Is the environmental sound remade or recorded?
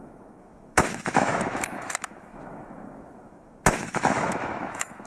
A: remade